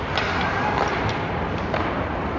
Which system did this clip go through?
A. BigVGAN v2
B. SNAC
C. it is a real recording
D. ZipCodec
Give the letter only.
A